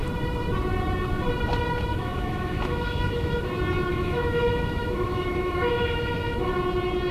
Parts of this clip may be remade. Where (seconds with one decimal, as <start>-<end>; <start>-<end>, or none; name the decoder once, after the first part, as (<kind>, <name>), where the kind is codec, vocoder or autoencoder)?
1.9-3.5 (autoencoder, DAC-VAE); 3.9-6.5